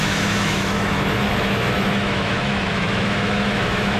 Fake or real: fake